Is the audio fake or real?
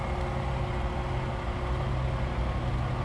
real